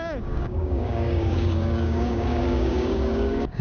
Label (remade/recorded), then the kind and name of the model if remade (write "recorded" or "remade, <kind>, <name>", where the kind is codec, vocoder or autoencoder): remade, codec, DAC